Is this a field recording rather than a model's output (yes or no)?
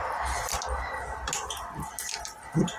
yes